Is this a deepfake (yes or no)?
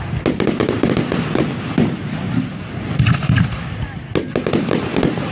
no